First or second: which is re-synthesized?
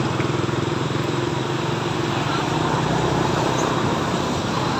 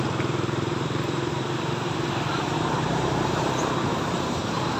second